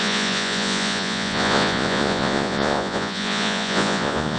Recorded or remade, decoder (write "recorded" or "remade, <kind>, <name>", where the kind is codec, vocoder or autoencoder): remade, vocoder, Vocos